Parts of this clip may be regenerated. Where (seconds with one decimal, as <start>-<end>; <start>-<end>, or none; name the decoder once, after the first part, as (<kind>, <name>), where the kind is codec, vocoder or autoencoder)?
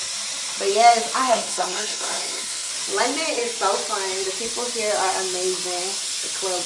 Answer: 1.3-2.7 (codec, SNAC)